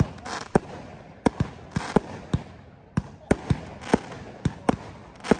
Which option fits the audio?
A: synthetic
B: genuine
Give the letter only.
B